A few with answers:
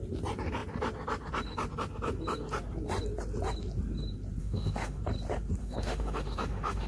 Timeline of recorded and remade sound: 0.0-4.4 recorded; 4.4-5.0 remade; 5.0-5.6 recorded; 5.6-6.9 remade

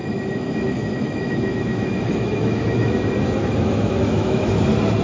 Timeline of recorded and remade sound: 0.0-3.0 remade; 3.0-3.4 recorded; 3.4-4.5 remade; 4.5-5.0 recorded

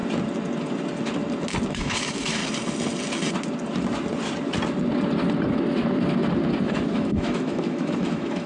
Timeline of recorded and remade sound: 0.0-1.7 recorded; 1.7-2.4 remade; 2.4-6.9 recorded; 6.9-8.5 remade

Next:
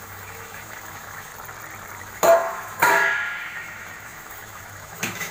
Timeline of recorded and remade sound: 0.0-1.3 remade; 1.3-2.0 recorded; 2.0-5.3 remade

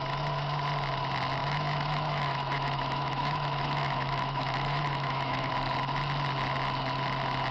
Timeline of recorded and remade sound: 0.0-1.4 recorded; 1.4-5.5 remade; 5.5-7.5 recorded